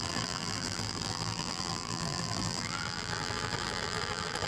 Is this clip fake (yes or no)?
yes